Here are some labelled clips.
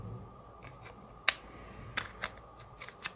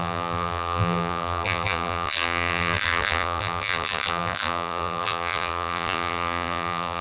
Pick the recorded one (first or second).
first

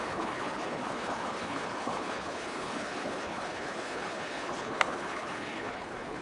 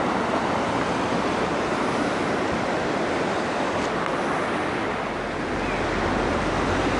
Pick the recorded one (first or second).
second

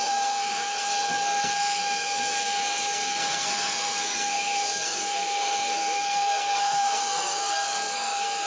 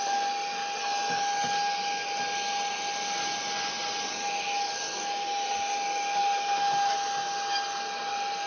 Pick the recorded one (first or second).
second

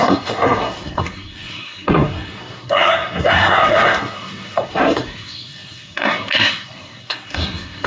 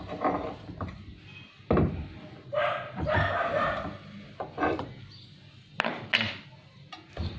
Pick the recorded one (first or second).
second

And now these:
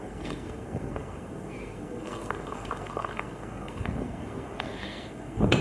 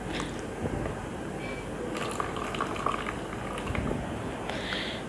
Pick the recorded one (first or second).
second